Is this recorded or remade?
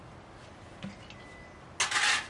recorded